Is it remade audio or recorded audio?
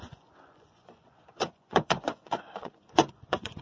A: remade